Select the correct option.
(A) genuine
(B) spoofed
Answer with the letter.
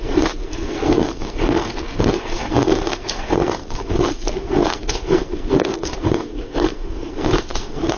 B